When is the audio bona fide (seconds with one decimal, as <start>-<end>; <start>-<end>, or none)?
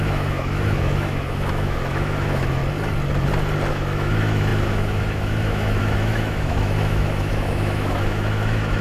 2.6-3.7